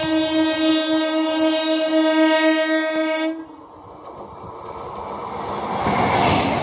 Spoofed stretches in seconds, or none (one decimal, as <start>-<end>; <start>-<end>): none

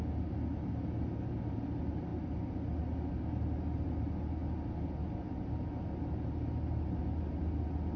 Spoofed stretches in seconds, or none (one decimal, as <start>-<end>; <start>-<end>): none